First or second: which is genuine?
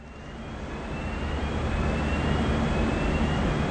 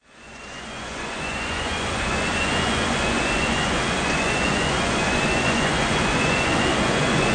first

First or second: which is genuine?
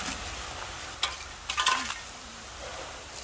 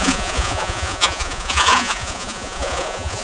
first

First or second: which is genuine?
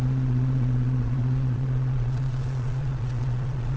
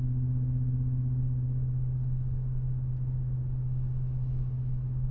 second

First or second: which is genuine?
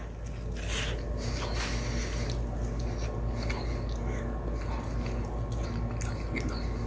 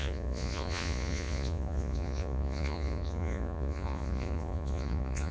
first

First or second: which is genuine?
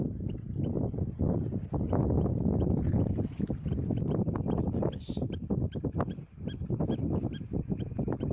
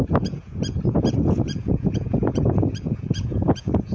first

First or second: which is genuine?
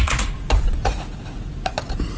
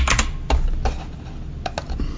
second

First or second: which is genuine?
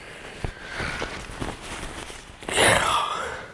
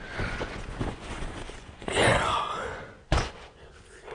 first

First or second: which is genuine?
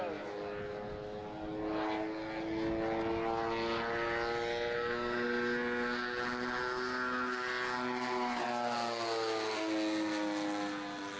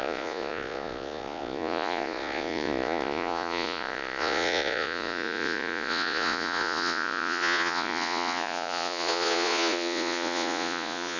first